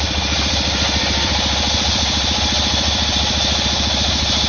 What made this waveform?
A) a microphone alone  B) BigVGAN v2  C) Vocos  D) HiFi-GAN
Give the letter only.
A